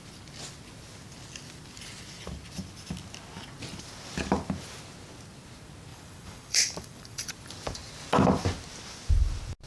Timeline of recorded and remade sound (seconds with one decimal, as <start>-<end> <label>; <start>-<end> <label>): 0.0-5.9 recorded; 5.9-7.3 remade; 7.3-9.7 recorded